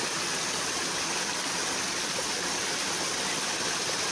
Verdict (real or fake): real